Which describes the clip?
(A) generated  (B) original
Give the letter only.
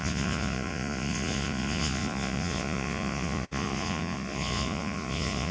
A